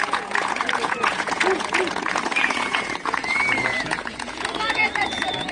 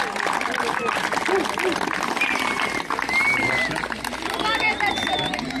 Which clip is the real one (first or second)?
second